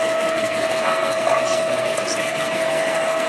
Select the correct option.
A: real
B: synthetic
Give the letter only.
B